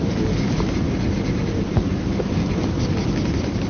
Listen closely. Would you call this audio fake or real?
real